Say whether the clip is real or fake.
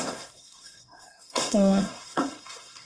fake